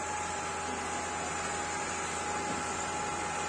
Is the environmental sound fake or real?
real